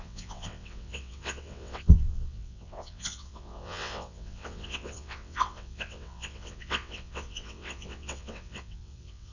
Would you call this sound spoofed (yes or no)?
yes